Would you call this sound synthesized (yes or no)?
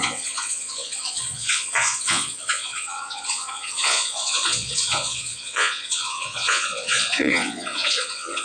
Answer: yes